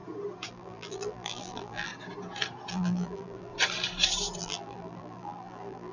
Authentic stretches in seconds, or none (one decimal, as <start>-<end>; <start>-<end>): 0.0-0.5; 1.9-2.7; 3.5-4.4